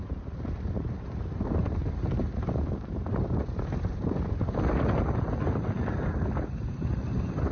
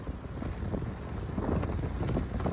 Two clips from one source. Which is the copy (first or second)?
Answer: first